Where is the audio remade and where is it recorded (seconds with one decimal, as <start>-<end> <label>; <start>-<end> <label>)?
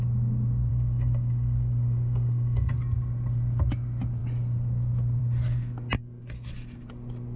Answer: 0.0-0.7 recorded; 0.7-2.7 remade; 2.7-7.4 recorded